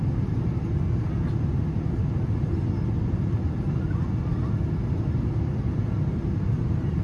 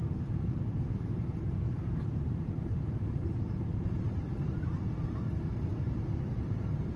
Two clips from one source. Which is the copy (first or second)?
second